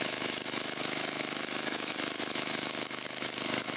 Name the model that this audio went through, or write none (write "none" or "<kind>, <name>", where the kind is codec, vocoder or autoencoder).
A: autoencoder, DAC-VAE